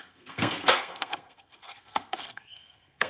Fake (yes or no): yes